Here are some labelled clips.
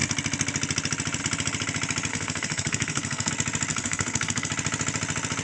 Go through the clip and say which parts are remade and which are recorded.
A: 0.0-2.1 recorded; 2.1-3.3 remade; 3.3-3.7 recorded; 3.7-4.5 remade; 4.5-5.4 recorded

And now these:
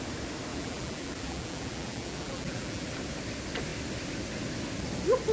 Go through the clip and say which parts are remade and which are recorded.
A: 0.0-0.5 recorded; 0.5-2.9 remade; 2.9-5.3 recorded

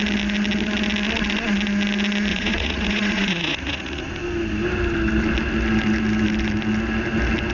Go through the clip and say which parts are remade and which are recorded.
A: 0.0-2.3 recorded; 2.3-4.0 remade; 4.0-7.5 recorded

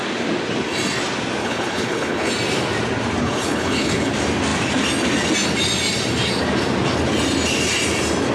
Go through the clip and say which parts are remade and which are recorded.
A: 0.0-1.4 recorded; 1.4-2.3 remade; 2.3-3.2 recorded; 3.2-4.1 remade; 4.1-8.3 recorded

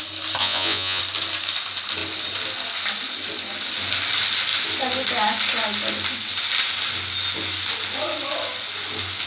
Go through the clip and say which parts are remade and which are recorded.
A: 0.0-0.4 recorded; 0.4-1.0 remade; 1.0-9.3 recorded

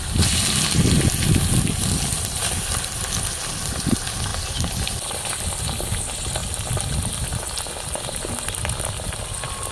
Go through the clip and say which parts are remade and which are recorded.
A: 0.0-4.3 recorded; 4.3-5.2 remade; 5.2-9.7 recorded

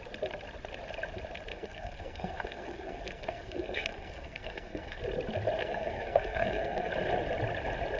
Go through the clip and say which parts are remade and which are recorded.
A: 0.0-1.5 recorded; 1.5-5.0 remade; 5.0-5.6 recorded; 5.6-6.9 remade; 6.9-8.0 recorded